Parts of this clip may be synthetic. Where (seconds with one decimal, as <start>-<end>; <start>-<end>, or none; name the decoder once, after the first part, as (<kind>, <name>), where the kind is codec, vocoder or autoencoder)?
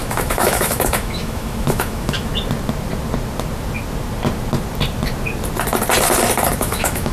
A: 0.0-2.3 (autoencoder, DAC-VAE); 6.6-7.1